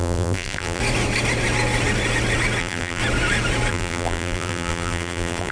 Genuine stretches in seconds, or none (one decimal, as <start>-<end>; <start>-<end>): 0.8-2.6; 3.0-3.7